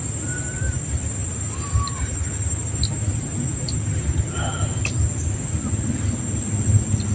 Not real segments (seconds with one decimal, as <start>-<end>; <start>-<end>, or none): none